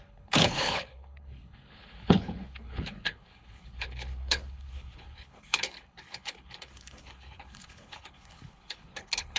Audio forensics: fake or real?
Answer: fake